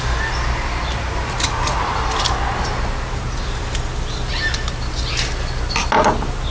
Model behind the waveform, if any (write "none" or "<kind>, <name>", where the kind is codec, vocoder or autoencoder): none